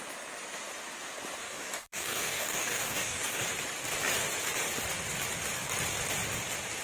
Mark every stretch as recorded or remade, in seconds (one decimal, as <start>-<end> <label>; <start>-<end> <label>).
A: 0.0-1.4 recorded; 1.4-3.5 remade; 3.5-6.8 recorded